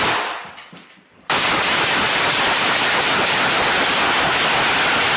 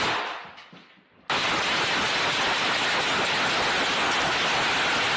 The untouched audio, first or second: second